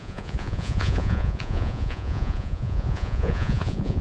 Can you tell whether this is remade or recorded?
remade